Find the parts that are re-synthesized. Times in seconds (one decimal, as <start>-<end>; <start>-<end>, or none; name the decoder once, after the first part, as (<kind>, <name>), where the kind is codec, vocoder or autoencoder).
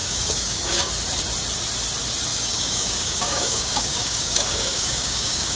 0.0-0.9 (codec, DAC); 2.3-5.6